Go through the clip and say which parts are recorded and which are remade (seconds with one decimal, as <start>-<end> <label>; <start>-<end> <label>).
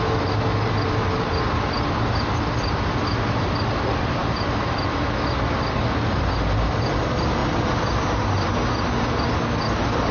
0.0-10.1 recorded